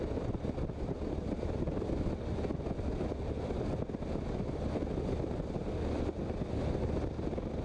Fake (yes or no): no